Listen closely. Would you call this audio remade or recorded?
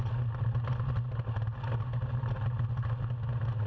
recorded